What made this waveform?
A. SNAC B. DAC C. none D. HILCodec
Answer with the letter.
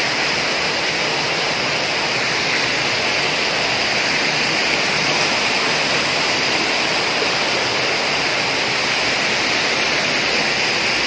C